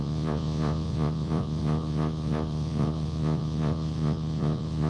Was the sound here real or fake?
fake